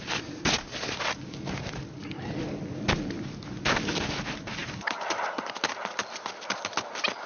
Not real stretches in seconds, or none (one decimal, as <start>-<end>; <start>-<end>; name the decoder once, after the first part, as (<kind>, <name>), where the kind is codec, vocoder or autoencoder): none